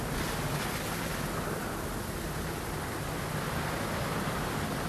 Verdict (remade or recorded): recorded